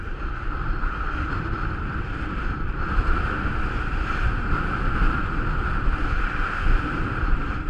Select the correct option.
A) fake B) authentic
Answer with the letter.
B